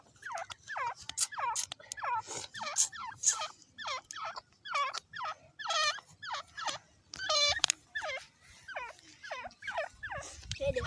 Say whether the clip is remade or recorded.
recorded